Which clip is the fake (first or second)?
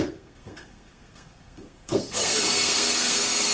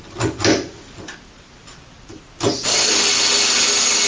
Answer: first